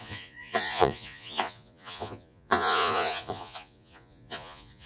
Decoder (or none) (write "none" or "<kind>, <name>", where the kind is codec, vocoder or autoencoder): vocoder, Vocos